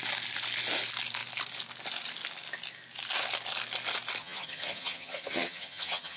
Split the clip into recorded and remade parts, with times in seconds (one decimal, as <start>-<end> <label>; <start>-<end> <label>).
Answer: 0.0-4.2 recorded; 4.2-6.2 remade